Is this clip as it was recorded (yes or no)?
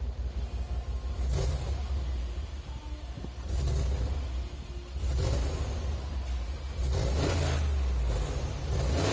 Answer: yes